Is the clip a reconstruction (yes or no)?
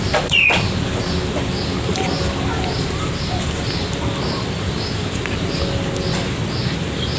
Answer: no